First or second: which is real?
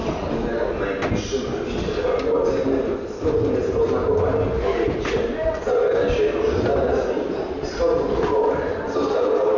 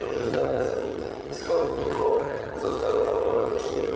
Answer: first